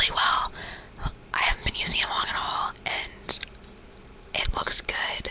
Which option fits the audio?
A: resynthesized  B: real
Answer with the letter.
B